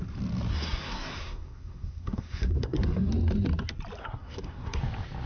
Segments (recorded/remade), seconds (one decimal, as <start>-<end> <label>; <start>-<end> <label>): 0.0-0.5 recorded; 0.5-3.1 remade; 3.1-4.0 recorded; 4.0-4.8 remade; 4.8-5.3 recorded